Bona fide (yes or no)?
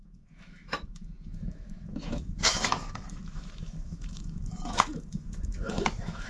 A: no